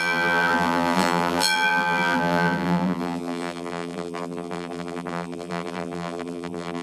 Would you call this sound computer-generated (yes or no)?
yes